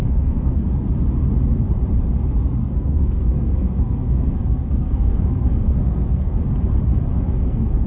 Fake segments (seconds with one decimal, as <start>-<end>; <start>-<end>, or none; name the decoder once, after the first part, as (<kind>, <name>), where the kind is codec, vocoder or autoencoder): 0.0-0.6 (codec, SNAC); 2.6-6.4; 7.1-7.9